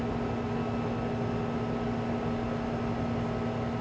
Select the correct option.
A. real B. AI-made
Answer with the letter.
A